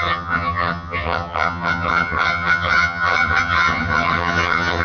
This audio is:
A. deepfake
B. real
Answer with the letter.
A